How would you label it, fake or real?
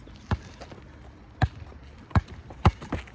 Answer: real